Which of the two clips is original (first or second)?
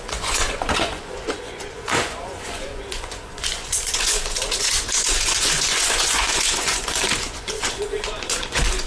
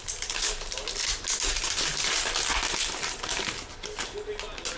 second